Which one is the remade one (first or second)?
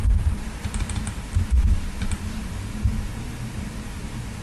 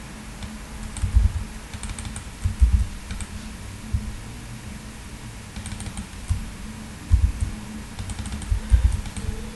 first